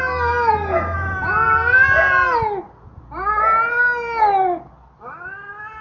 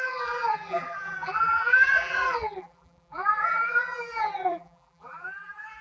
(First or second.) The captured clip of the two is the first